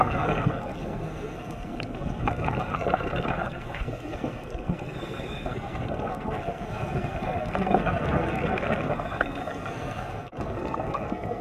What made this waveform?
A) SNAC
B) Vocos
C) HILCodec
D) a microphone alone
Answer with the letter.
A